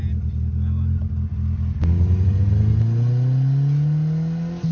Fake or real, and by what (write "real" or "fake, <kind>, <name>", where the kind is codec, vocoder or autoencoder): real